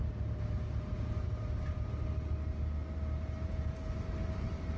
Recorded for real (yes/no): yes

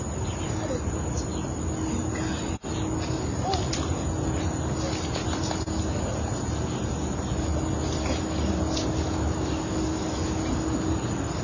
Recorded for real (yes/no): yes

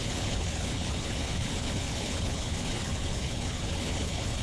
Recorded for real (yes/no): no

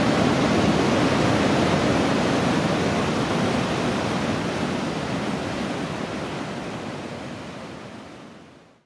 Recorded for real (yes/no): yes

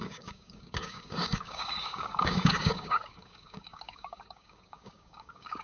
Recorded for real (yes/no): no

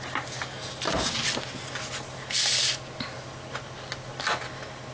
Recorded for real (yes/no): yes